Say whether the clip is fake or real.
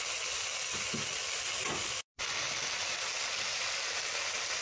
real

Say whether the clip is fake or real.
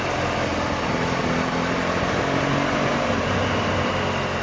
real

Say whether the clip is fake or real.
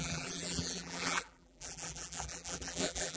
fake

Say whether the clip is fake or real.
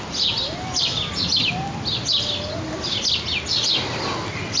real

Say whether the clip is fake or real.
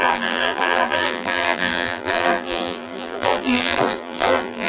fake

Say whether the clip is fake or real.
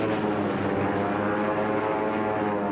real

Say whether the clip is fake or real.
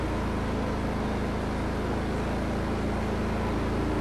real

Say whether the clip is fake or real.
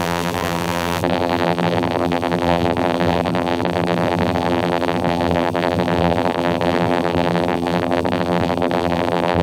fake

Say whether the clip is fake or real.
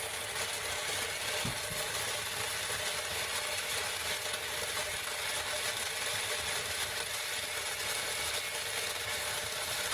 real